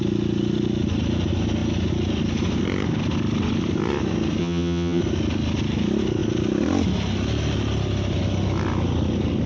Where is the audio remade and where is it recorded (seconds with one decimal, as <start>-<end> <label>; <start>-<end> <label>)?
0.0-4.4 recorded; 4.4-5.0 remade; 5.0-9.5 recorded